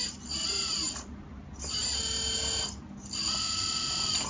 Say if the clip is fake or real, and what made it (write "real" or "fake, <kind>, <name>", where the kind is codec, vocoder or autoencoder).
real